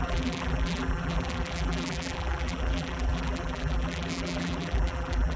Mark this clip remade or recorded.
remade